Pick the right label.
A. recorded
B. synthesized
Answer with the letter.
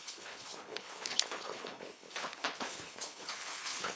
B